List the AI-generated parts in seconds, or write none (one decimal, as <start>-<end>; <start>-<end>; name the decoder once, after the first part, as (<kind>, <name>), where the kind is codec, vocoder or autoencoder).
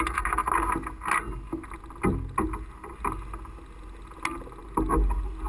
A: none